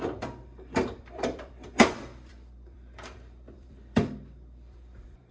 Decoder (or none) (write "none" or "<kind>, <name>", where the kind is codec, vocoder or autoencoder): vocoder, BigVGAN v2